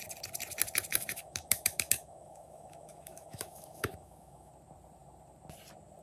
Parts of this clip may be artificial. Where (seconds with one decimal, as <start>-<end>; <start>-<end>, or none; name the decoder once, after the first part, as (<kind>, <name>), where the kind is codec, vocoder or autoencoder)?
0.9-4.5 (autoencoder, DAC-VAE)